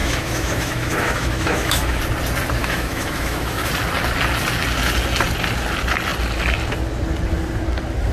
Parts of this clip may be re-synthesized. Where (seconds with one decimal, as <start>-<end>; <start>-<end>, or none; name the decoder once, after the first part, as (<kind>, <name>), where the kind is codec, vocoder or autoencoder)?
0.0-2.0 (autoencoder, DAC-VAE); 2.6-3.7